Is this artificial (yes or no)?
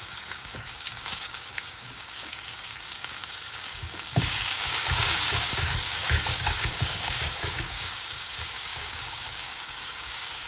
yes